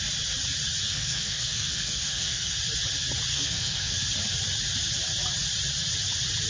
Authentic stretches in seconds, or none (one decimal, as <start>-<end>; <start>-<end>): 0.0-0.8; 2.6-3.3; 3.9-6.5